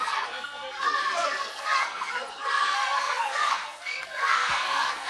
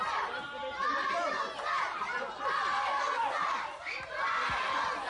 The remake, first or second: first